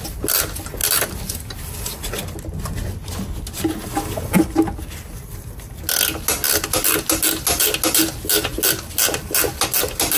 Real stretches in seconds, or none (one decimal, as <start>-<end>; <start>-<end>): 0.0-10.2